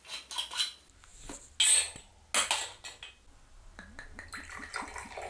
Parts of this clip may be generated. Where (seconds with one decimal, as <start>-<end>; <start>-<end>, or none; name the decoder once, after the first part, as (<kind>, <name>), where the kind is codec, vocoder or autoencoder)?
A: none